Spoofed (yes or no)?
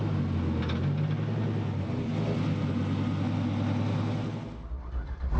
no